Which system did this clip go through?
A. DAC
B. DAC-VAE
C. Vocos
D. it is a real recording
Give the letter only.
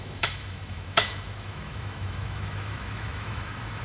B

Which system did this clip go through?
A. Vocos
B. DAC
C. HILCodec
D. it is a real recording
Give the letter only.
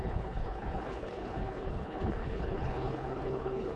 C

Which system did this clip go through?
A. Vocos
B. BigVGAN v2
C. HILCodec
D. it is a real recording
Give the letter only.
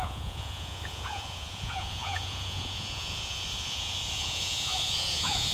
A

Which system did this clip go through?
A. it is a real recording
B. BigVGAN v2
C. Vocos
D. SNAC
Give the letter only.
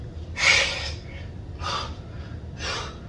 A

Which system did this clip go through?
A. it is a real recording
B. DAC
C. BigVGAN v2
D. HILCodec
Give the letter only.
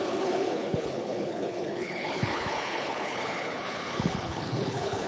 D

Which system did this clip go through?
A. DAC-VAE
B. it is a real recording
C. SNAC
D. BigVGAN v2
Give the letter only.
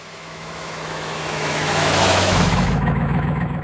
A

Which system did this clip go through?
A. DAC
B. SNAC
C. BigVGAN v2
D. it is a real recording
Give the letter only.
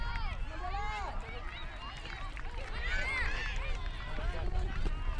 D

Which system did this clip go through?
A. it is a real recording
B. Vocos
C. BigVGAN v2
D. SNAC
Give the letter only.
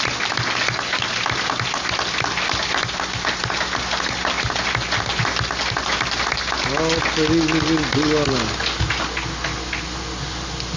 A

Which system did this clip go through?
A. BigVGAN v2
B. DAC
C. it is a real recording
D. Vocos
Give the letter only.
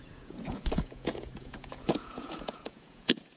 D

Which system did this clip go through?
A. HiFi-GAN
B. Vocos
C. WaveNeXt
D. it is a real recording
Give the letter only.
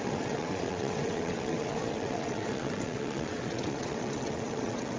C